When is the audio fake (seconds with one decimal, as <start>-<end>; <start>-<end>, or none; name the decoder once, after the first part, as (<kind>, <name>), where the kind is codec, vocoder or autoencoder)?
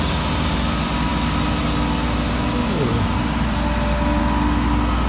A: none